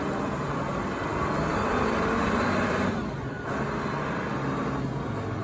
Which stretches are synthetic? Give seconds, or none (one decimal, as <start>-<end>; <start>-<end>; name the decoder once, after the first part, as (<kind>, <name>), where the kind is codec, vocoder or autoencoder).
none